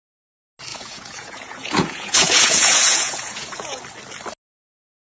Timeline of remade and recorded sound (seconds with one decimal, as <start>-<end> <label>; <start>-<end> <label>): 0.0-0.7 recorded; 0.7-3.8 remade; 3.8-5.1 recorded